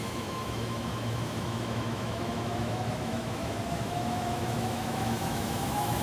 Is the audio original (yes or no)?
no